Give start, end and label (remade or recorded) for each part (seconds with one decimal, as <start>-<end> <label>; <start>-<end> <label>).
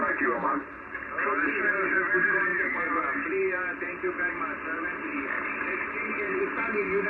0.0-7.1 recorded